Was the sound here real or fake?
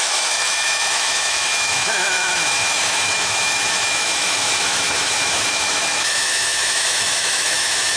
fake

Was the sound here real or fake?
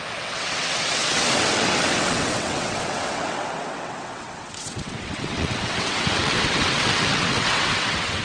fake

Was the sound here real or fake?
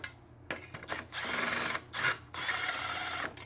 real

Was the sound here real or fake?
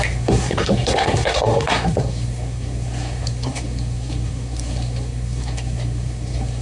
fake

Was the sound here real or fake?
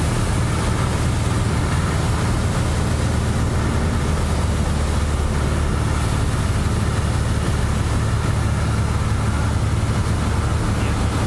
real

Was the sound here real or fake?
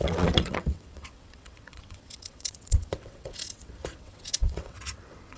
fake